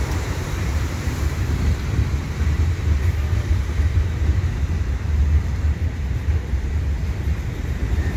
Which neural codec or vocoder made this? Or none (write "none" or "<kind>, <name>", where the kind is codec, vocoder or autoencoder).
vocoder, BigVGAN v2